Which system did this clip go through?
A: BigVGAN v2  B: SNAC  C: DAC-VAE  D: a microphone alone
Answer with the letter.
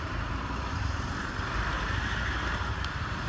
A